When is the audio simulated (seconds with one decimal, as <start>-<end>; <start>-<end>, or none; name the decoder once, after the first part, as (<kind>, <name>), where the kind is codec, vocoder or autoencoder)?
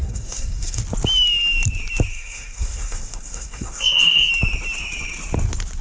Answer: 0.0-0.8 (codec, SNAC); 2.1-4.3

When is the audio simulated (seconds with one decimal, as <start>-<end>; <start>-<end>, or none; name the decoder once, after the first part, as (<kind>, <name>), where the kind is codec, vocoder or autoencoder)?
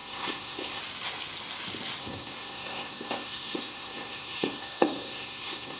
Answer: 0.0-0.8 (codec, SNAC); 2.0-5.8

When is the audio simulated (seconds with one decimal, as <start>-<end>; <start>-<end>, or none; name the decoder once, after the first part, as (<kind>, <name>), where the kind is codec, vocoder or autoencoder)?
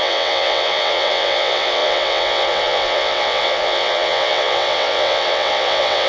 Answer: 0.0-6.1 (vocoder, WaveNeXt)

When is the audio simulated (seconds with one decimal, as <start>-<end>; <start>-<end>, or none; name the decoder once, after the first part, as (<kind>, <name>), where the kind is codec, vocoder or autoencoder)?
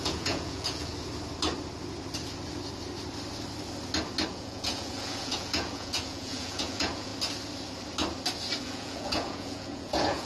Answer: 0.0-0.9 (vocoder, Vocos); 4.3-7.1; 8.6-10.3